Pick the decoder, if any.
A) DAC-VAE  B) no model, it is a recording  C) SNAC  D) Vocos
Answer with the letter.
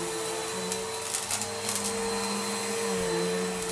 B